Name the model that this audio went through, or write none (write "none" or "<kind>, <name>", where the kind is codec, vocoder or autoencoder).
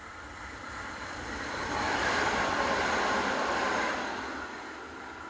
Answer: none